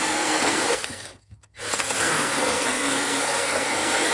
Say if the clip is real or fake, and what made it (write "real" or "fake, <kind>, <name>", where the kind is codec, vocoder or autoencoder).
fake, codec, SNAC